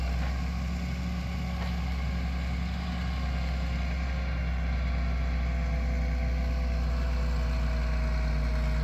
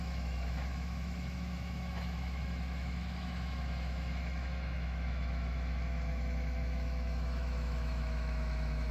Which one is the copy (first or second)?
second